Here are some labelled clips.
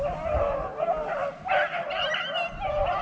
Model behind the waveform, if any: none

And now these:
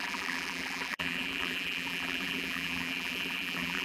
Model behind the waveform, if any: vocoder, BigVGAN v2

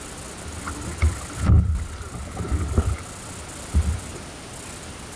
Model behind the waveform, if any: none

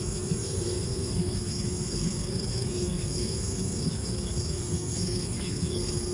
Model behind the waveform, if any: codec, SNAC